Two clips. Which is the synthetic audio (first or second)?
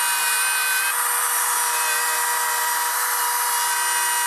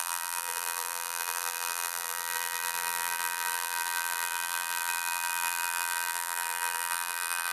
second